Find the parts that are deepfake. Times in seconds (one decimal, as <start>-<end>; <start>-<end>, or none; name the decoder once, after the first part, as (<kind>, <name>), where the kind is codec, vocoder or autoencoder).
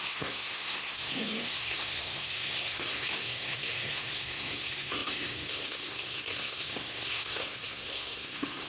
0.0-8.7 (codec, SNAC)